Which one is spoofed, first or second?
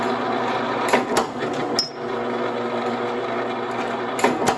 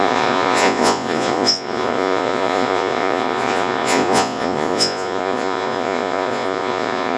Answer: second